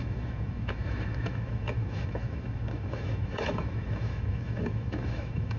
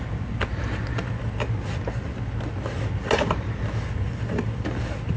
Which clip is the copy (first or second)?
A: first